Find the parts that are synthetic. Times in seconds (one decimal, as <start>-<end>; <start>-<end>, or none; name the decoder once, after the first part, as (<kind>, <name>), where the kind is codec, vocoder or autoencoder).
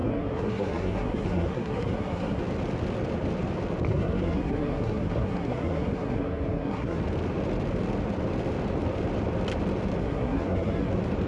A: 0.0-2.4 (codec, SNAC); 3.9-7.0; 10.0-10.9